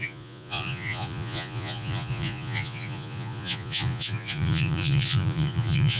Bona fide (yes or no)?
no